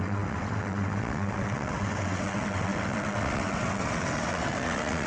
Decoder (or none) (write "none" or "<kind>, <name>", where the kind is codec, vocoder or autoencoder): vocoder, WaveNeXt